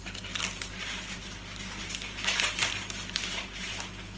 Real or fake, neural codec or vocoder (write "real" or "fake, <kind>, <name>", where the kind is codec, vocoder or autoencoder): real